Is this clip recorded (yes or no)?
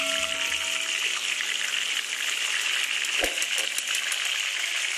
yes